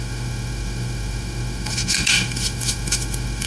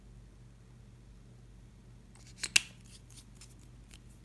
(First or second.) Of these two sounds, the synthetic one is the first